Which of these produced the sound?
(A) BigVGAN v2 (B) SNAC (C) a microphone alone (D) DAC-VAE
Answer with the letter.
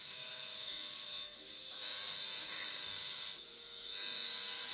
D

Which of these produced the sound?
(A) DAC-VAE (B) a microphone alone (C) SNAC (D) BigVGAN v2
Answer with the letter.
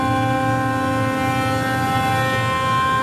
B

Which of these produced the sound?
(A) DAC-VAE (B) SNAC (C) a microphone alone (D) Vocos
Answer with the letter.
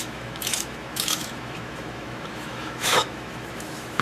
A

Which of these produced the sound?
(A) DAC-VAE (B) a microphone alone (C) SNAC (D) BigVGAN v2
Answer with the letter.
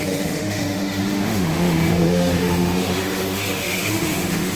A